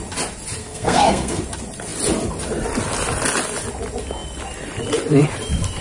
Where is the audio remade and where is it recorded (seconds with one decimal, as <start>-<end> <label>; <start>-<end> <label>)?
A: 0.0-0.6 recorded; 0.6-1.4 remade; 1.4-5.8 recorded